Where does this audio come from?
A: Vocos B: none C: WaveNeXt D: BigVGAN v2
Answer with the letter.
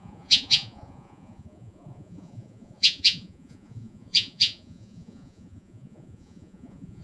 A